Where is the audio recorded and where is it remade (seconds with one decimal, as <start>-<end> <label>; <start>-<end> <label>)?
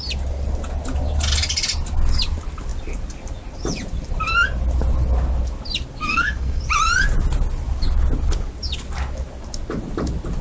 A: 0.0-6.0 recorded; 6.0-6.6 remade; 6.6-10.4 recorded